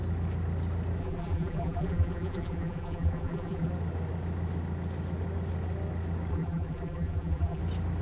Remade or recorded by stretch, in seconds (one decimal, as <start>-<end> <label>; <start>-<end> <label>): 0.0-1.0 recorded; 1.0-3.7 remade; 3.7-6.3 recorded; 6.3-7.6 remade; 7.6-8.0 recorded